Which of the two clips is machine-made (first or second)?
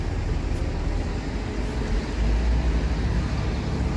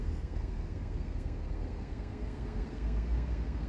second